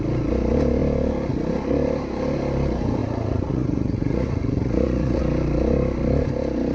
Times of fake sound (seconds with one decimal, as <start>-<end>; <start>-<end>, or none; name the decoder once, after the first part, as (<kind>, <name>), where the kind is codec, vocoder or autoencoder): 3.0-5.2 (vocoder, Vocos)